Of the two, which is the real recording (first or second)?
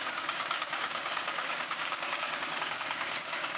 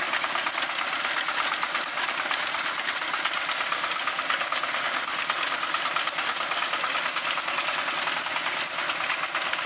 second